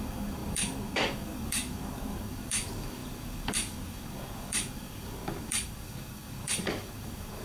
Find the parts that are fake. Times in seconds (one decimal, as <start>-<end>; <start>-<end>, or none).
0.0-7.4